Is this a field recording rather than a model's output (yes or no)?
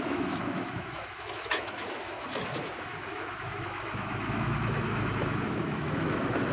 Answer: no